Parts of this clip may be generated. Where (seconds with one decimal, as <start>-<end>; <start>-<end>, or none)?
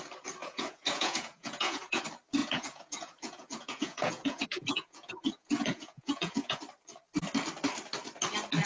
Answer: 0.4-2.0; 2.4-6.6